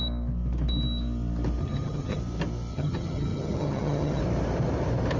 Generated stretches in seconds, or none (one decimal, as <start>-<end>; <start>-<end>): 1.6-2.2; 2.7-4.2